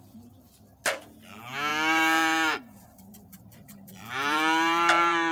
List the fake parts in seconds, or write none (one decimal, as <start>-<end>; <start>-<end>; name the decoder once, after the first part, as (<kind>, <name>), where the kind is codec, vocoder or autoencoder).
1.7-5.3 (vocoder, BigVGAN v2)